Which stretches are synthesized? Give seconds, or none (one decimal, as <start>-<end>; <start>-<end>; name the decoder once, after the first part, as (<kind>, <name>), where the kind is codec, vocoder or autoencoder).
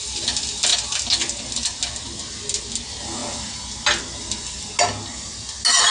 none